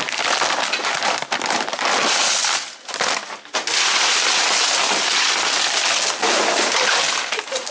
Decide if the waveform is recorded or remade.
recorded